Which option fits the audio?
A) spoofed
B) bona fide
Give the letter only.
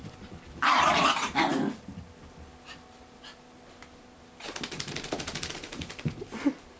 B